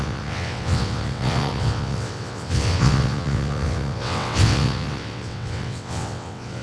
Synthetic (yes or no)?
yes